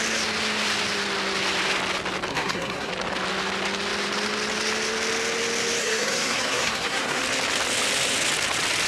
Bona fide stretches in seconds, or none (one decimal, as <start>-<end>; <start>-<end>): 0.0-2.3; 2.9-5.8; 7.2-8.9